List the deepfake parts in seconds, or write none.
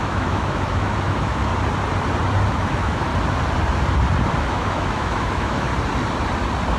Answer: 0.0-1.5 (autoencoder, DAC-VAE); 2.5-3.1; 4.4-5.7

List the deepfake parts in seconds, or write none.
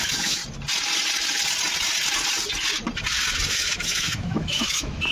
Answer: 0.0-0.4 (autoencoder, DAC-VAE); 3.5-5.1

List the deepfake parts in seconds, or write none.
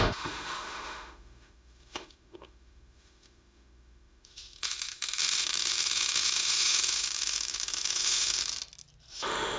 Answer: 0.0-8.5 (autoencoder, DAC-VAE); 9.1-9.6